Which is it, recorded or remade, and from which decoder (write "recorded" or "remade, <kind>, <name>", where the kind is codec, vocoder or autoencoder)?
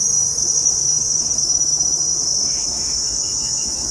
remade, autoencoder, DAC-VAE